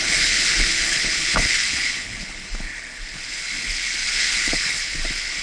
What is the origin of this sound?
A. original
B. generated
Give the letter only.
B